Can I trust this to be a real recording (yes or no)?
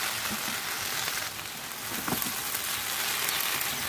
yes